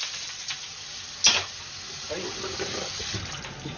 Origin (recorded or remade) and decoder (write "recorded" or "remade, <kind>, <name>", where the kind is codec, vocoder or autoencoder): recorded